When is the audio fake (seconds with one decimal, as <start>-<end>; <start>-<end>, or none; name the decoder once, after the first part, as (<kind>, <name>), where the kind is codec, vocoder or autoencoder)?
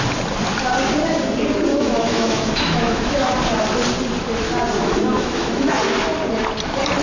1.7-3.3 (autoencoder, DAC-VAE); 4.8-5.7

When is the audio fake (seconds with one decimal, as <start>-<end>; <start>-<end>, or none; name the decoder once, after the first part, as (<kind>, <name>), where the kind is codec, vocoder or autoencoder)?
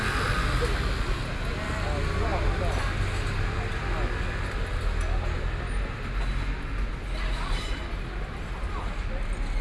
none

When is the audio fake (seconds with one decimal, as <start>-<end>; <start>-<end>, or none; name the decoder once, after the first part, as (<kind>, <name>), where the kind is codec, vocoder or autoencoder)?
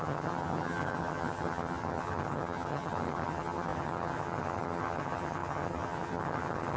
0.0-6.8 (vocoder, HiFi-GAN)